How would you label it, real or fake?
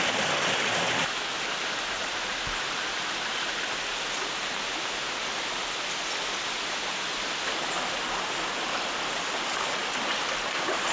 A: real